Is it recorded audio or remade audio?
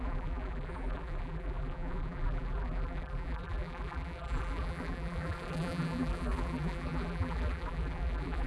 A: remade